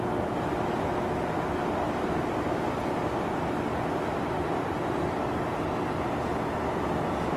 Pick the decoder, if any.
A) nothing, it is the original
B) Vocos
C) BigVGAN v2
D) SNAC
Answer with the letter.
A